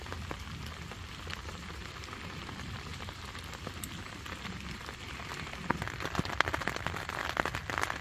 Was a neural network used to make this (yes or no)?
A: no